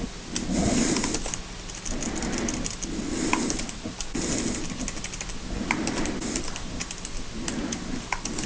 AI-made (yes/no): no